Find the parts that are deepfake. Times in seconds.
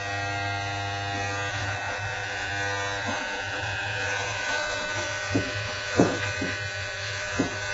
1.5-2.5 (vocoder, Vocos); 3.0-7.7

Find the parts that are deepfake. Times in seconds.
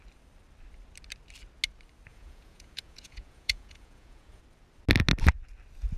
2.1-4.4 (vocoder, Vocos)